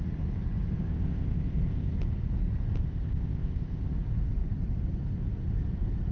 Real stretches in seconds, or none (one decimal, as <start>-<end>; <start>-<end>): 0.0-0.8; 1.9-2.8; 3.9-6.1